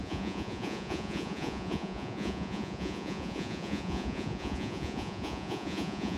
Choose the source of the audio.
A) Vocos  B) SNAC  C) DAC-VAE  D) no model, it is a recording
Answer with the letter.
A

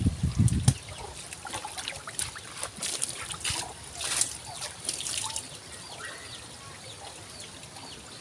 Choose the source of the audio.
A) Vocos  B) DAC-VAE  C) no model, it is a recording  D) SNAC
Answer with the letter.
C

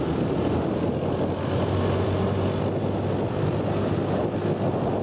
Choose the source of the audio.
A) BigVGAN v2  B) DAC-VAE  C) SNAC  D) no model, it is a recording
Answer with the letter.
D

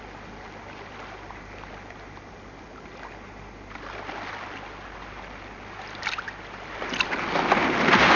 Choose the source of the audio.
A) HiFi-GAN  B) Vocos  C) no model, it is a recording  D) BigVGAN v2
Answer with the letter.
C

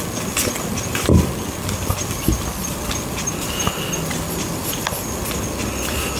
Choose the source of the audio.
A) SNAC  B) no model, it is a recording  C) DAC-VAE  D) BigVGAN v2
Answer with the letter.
B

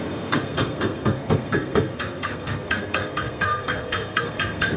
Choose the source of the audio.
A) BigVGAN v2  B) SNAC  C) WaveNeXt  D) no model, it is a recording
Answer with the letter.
B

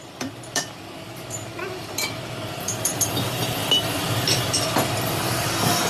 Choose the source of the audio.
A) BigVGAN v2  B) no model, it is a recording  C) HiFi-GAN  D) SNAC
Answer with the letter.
A